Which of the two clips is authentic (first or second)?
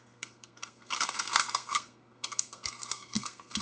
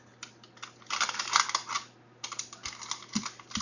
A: second